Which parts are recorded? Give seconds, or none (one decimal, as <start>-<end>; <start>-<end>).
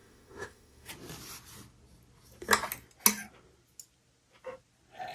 0.9-5.1